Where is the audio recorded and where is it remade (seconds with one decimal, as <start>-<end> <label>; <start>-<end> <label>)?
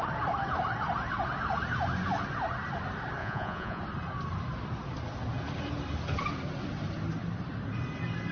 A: 0.0-3.2 recorded; 3.2-3.8 remade; 3.8-8.3 recorded